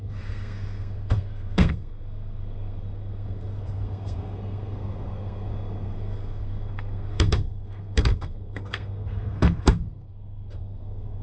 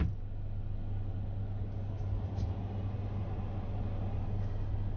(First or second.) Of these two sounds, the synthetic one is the first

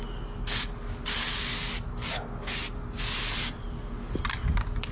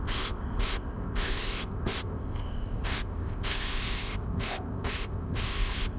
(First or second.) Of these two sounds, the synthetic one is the second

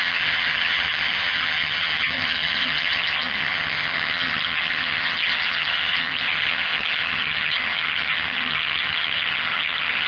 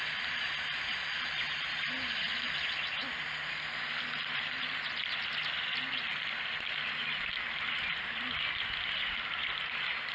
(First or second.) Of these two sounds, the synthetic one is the first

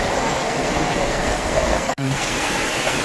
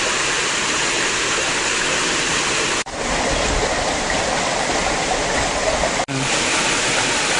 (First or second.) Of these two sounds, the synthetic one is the first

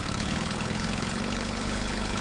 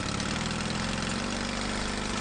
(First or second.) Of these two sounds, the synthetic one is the first